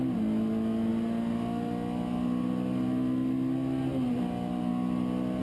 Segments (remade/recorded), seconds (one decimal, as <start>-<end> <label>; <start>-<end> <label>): 0.0-5.4 recorded